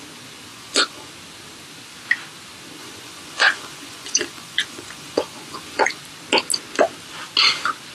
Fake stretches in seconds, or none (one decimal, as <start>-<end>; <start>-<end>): 0.5-1.1; 2.8-6.0